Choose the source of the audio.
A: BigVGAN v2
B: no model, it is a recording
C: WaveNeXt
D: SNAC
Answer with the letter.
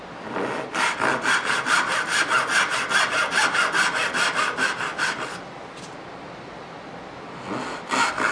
B